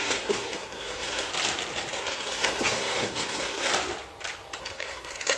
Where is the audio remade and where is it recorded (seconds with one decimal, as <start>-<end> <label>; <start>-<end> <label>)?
0.0-1.3 remade; 1.3-1.9 recorded; 1.9-3.7 remade; 3.7-4.6 recorded; 4.6-5.4 remade